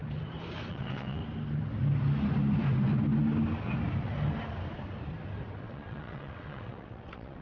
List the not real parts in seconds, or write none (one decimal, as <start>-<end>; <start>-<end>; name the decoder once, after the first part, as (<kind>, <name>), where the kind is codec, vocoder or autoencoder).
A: 0.7-1.2 (vocoder, WaveNeXt); 5.6-7.4